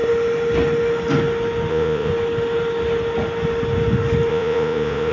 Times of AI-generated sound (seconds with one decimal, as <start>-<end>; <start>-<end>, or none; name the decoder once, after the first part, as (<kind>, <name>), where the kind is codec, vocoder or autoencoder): 1.7-2.1 (vocoder, Vocos); 4.3-5.1